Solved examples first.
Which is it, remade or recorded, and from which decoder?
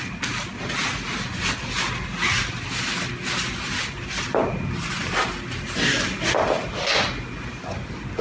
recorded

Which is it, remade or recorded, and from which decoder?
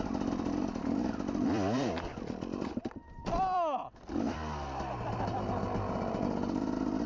remade, vocoder, BigVGAN v2